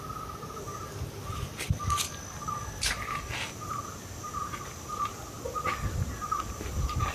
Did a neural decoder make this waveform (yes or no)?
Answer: no